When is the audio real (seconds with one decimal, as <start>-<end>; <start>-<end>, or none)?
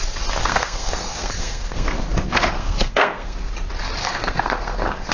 0.0-0.4; 3.5-4.0